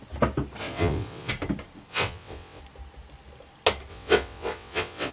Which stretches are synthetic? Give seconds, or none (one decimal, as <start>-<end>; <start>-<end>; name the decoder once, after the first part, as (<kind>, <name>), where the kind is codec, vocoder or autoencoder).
0.6-1.3 (vocoder, WaveNeXt); 1.9-2.6; 3.9-5.1